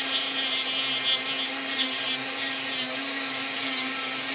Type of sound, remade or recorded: recorded